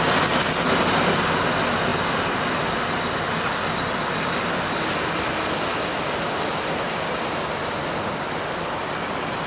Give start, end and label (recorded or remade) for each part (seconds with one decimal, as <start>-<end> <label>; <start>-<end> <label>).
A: 0.0-9.5 recorded